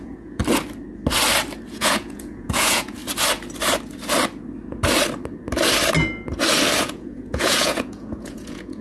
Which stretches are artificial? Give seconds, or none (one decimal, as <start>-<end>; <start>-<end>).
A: 0.0-0.4; 1.7-3.0; 6.8-8.8